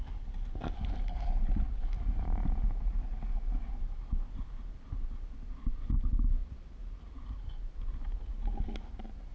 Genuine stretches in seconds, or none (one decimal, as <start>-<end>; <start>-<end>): 0.0-9.3